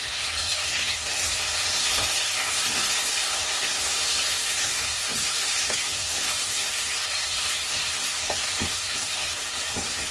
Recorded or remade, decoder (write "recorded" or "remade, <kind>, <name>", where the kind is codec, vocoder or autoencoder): remade, codec, SNAC